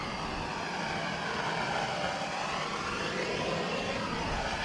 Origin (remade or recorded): recorded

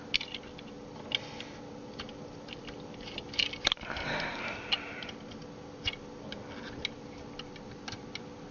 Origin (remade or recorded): recorded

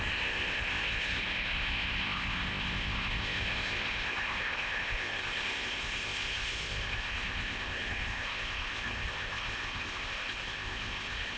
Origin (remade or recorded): remade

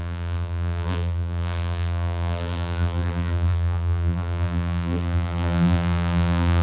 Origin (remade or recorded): remade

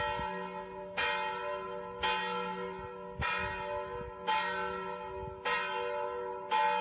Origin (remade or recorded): recorded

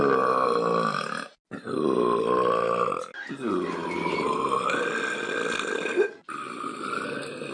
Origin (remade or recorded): recorded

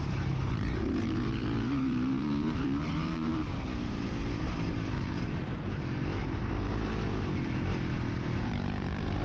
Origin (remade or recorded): remade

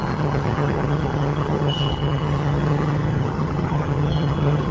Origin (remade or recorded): remade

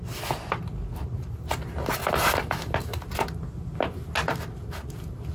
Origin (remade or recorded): recorded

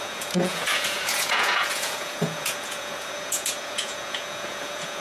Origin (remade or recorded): remade